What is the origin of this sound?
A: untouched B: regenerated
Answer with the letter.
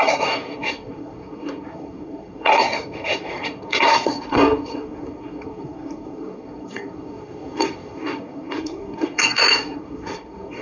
B